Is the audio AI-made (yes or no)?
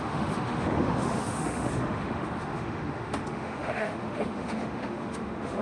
yes